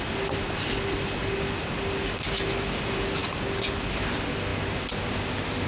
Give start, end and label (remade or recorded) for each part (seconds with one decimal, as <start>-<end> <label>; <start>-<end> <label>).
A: 0.0-5.7 recorded